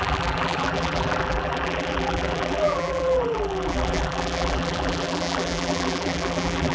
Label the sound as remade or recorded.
remade